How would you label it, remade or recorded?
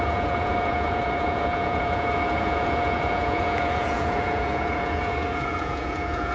remade